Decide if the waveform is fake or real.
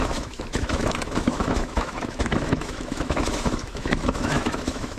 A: fake